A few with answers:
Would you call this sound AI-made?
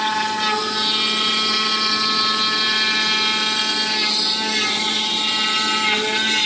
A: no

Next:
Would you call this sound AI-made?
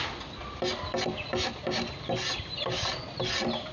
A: no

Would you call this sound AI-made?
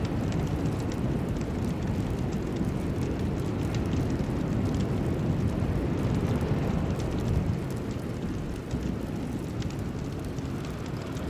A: no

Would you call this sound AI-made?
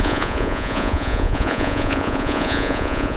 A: yes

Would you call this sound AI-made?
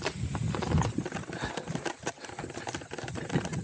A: no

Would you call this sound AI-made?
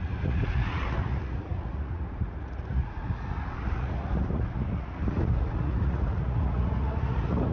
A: yes